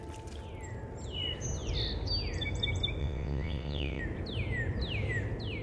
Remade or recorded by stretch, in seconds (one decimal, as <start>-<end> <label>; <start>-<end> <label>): 0.0-3.0 recorded; 3.0-4.0 remade; 4.0-5.6 recorded